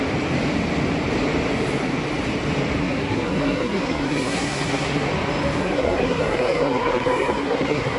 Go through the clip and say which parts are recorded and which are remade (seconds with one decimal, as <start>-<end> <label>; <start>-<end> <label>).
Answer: 0.0-2.8 recorded; 2.8-5.1 remade; 5.1-5.6 recorded; 5.6-8.0 remade